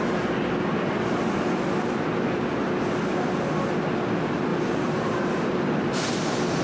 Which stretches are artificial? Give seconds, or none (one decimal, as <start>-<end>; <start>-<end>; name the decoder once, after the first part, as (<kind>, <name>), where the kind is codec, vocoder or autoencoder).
4.5-6.6 (vocoder, BigVGAN v2)